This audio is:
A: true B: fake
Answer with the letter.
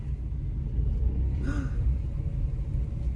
A